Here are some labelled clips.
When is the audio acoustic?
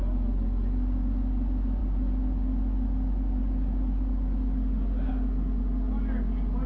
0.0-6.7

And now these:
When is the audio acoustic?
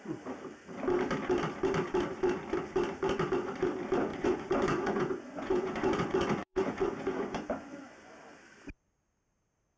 0.0-4.1; 8.2-9.8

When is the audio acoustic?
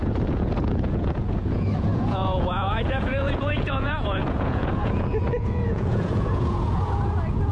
none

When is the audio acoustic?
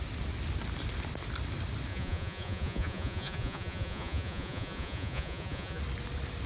0.0-1.9; 5.8-6.5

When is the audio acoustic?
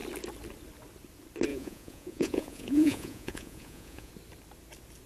0.0-1.5; 4.1-5.1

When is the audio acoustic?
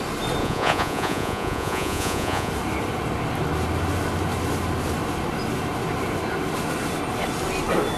0.0-0.4; 2.5-8.0